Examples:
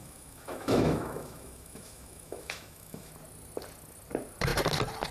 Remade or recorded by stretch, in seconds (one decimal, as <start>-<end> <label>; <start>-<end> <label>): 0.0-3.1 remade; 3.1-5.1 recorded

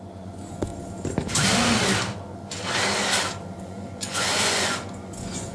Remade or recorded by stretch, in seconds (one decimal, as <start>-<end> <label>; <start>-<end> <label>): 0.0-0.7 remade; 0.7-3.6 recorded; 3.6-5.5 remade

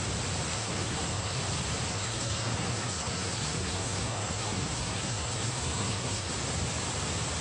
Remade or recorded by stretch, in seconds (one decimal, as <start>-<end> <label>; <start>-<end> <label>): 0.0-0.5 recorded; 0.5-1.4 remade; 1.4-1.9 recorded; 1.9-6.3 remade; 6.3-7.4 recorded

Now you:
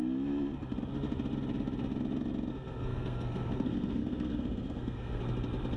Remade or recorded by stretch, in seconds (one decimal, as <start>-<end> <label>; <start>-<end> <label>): 0.0-2.5 recorded; 2.5-5.2 remade; 5.2-5.8 recorded

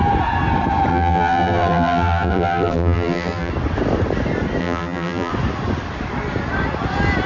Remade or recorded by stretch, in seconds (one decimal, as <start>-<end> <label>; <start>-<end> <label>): 0.0-0.9 recorded; 0.9-3.5 remade; 3.5-4.6 recorded; 4.6-5.3 remade; 5.3-7.3 recorded

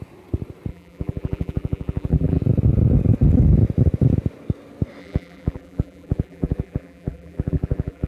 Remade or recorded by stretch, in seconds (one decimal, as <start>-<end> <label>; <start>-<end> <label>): 0.0-0.7 recorded; 0.7-2.4 remade; 2.4-5.0 recorded; 5.0-8.1 remade

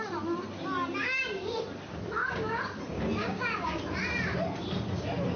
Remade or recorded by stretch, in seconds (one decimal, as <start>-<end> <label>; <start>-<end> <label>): 0.0-1.0 recorded; 1.0-1.5 remade; 1.5-2.2 recorded; 2.2-2.8 remade; 2.8-3.2 recorded; 3.2-3.8 remade; 3.8-5.4 recorded

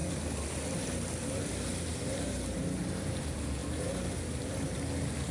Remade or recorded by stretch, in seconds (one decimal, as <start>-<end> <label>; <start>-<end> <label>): 0.0-3.2 recorded; 3.2-3.6 remade; 3.6-5.3 recorded